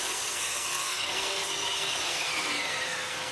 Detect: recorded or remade remade